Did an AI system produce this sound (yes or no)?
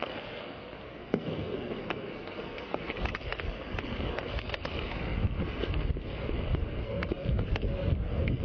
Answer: yes